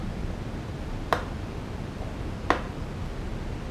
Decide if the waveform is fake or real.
real